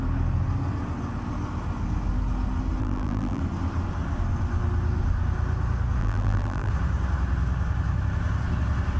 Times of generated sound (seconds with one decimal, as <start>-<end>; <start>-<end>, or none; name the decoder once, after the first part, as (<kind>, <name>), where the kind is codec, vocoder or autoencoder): 2.8-3.4 (vocoder, BigVGAN v2); 6.0-6.7